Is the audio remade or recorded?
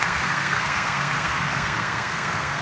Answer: remade